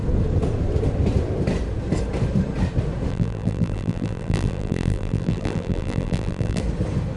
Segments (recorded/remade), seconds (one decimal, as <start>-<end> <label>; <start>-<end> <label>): 0.0-3.1 recorded; 3.1-6.6 remade; 6.6-7.2 recorded